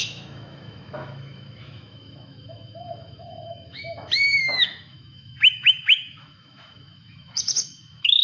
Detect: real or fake fake